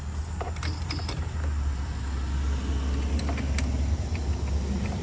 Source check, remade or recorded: recorded